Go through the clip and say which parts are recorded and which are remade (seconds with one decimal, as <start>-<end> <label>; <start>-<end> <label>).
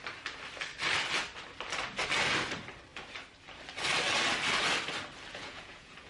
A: 0.0-5.3 recorded; 5.3-6.1 remade